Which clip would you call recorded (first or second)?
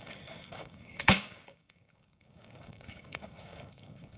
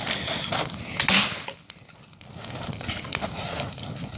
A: second